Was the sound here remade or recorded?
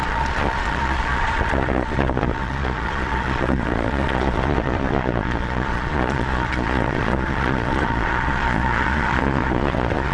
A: remade